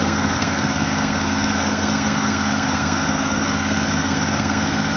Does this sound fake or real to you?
fake